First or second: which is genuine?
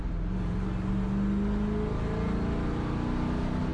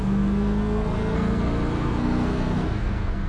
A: first